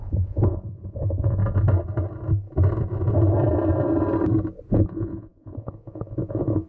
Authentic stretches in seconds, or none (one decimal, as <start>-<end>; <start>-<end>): 1.4-4.7